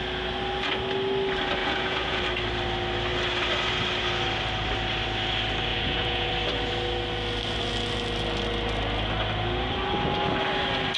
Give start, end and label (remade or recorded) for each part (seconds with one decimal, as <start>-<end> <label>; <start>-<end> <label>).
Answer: 0.0-1.6 recorded; 1.6-2.2 remade; 2.2-5.7 recorded; 5.7-6.3 remade; 6.3-11.0 recorded